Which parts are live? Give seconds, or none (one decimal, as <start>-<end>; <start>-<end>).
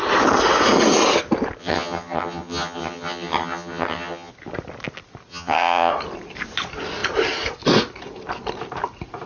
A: 0.0-1.6; 4.3-5.3; 5.9-9.3